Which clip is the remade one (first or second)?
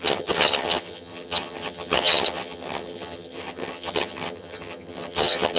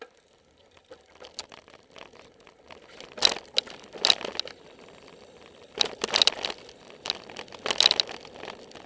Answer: first